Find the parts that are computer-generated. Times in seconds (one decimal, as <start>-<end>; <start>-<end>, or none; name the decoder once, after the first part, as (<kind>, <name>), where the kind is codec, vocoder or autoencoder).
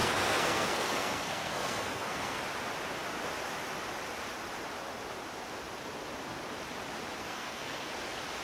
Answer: 0.0-2.4 (codec, SNAC); 7.2-7.9